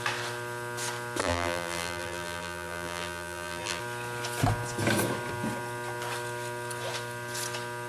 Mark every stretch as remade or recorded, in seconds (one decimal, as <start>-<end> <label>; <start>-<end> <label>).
0.0-1.2 recorded; 1.2-3.8 remade; 3.8-7.9 recorded

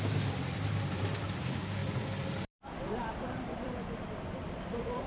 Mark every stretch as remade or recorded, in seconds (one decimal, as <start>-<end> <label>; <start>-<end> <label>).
0.0-1.8 recorded; 1.8-5.1 remade

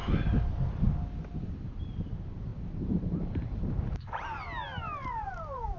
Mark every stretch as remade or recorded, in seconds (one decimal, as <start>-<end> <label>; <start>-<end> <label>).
0.0-1.4 recorded; 1.4-5.8 remade